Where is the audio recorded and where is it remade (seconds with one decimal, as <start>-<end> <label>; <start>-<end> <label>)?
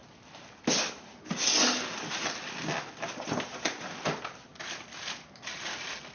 0.0-6.1 recorded